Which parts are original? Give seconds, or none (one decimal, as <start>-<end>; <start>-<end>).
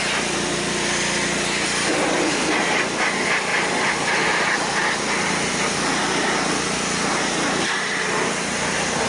0.0-9.1